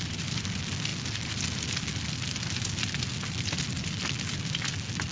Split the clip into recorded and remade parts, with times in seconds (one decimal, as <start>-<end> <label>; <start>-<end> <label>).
0.0-5.1 recorded